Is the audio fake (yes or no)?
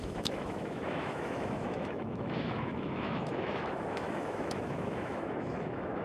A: yes